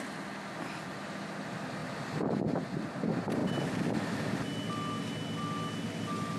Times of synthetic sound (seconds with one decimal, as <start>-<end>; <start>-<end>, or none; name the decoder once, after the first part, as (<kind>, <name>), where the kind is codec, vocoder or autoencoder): none